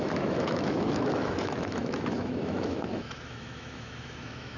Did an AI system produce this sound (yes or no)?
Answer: yes